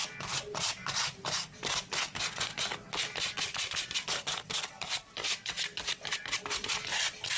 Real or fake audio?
real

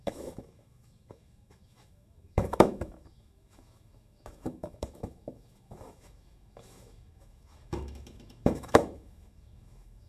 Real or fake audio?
fake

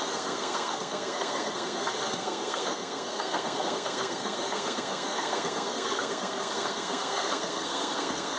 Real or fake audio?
fake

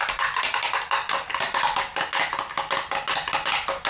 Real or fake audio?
real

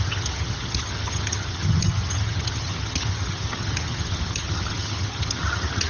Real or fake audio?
fake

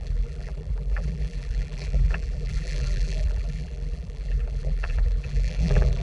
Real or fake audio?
fake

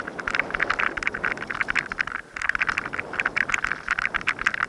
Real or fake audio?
real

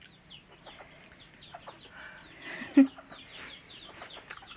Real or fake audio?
real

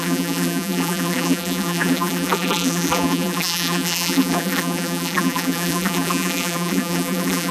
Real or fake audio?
fake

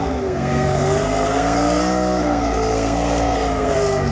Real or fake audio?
fake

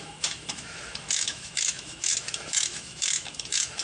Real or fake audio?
fake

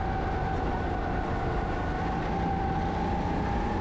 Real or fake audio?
real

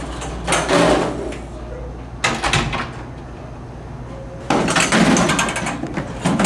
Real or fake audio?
real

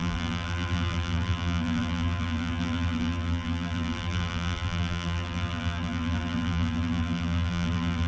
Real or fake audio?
fake